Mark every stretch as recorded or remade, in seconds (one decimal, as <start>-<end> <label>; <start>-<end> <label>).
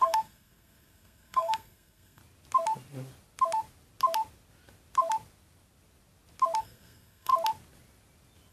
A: 0.0-2.2 remade; 2.2-6.6 recorded; 6.6-7.3 remade; 7.3-8.5 recorded